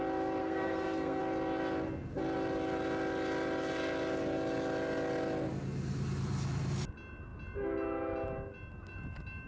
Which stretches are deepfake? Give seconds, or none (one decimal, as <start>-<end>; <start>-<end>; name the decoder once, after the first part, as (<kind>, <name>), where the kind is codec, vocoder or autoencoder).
0.4-1.2 (codec, SNAC)